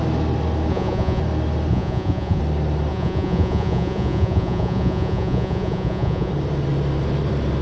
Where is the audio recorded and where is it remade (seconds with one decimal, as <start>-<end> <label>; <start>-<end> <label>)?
0.0-0.7 recorded; 0.7-1.2 remade; 1.2-1.7 recorded; 1.7-2.4 remade; 2.4-2.9 recorded; 2.9-6.3 remade; 6.3-7.6 recorded